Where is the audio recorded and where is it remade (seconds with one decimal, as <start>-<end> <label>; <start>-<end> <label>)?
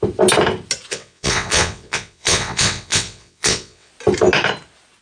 0.0-0.9 recorded; 0.9-3.9 remade; 3.9-5.0 recorded